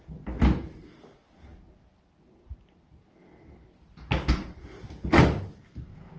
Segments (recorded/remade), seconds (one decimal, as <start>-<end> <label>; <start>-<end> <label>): 0.0-6.2 recorded